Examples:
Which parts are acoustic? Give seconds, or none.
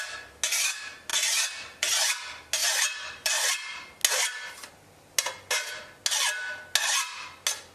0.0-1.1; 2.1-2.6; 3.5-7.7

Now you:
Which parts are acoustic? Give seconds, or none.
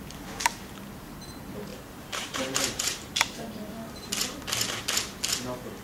0.0-1.7; 4.1-5.8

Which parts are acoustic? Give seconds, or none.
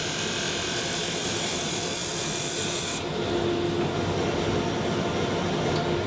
2.0-6.1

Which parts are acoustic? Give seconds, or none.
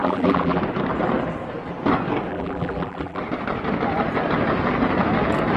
0.6-2.3; 3.2-5.6